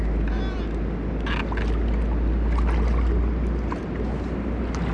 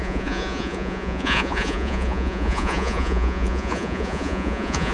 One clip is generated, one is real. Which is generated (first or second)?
second